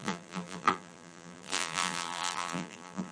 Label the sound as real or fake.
fake